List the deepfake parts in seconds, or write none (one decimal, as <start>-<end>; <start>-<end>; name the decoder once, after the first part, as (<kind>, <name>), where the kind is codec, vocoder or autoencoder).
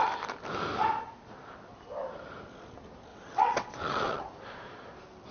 3.1-4.2 (vocoder, WaveNeXt)